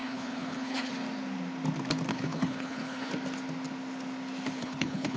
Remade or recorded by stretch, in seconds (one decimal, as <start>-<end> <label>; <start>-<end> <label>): 0.0-0.9 remade; 0.9-2.1 recorded; 2.1-3.1 remade; 3.1-4.6 recorded; 4.6-5.2 remade

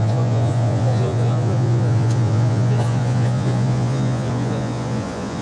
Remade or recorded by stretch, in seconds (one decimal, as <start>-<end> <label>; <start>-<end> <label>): 0.0-5.4 remade

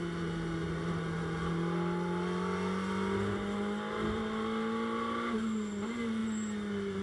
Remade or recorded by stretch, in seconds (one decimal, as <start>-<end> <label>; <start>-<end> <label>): 0.0-7.0 recorded

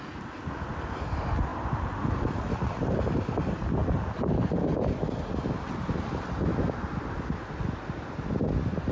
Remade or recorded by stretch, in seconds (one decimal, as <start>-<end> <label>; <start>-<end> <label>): 0.0-8.9 recorded

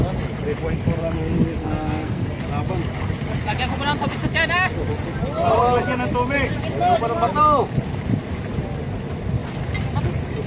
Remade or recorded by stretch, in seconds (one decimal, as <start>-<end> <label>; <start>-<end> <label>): 0.0-1.6 recorded; 1.6-2.4 remade; 2.4-10.5 recorded

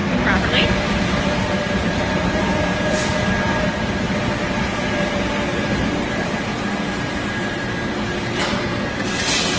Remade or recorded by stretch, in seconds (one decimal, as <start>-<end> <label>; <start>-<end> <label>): 0.0-1.2 recorded; 1.2-3.1 remade; 3.1-4.6 recorded; 4.6-6.5 remade; 6.5-7.0 recorded; 7.0-8.7 remade; 8.7-9.2 recorded; 9.2-9.6 remade